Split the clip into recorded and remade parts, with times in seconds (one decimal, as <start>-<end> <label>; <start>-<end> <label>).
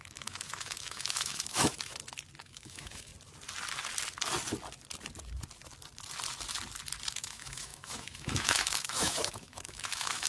0.0-1.9 remade; 1.9-2.4 recorded; 2.4-3.1 remade; 3.1-7.1 recorded; 7.1-10.3 remade